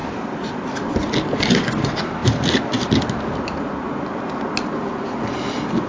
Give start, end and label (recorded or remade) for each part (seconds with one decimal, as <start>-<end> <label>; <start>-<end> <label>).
0.0-0.9 remade; 0.9-5.9 recorded